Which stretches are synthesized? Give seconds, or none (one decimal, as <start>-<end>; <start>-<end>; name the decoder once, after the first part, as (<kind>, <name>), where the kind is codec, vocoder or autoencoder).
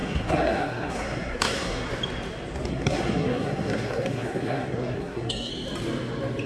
0.0-1.9 (codec, SNAC); 2.7-5.5